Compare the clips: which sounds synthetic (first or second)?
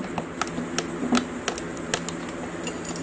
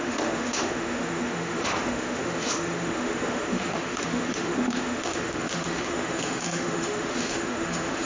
second